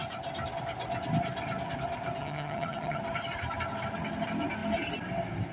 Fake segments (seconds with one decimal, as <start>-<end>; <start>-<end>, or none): 2.2-3.0